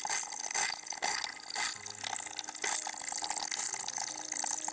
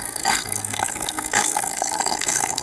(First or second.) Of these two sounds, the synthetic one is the second